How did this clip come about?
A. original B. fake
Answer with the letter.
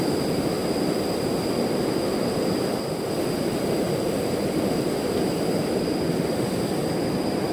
A